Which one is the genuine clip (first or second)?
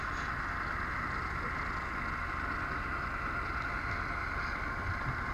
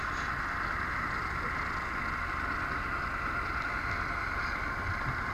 first